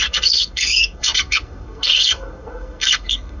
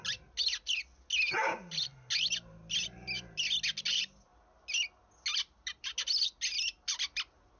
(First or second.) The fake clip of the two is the first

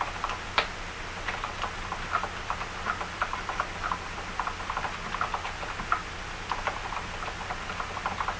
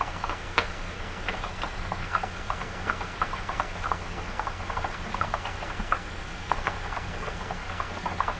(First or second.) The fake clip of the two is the second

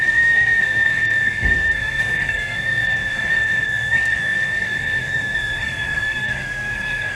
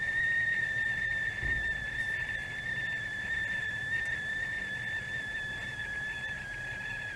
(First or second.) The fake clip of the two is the first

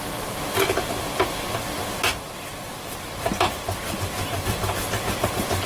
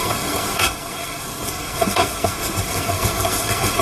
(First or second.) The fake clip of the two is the second